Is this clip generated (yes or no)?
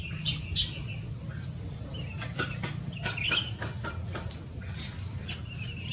no